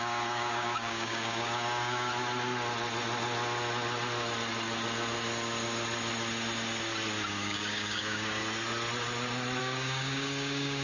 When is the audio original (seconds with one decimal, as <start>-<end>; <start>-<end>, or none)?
2.1-7.3; 8.4-9.6